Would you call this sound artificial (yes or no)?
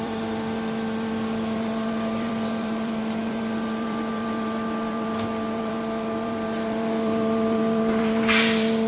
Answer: yes